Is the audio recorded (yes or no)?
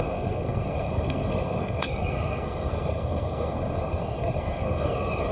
no